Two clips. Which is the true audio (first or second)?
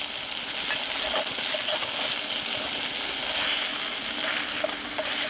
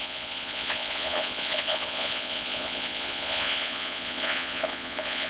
first